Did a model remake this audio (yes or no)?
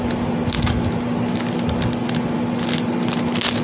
no